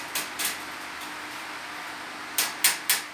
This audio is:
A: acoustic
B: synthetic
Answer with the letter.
A